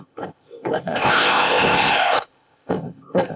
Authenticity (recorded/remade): remade